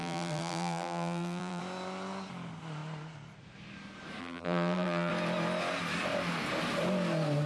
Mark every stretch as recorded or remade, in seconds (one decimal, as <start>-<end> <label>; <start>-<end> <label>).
0.0-1.6 remade; 1.6-4.2 recorded; 4.2-5.1 remade; 5.1-7.5 recorded